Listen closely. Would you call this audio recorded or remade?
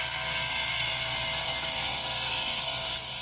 remade